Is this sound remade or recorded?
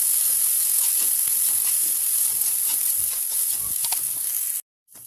recorded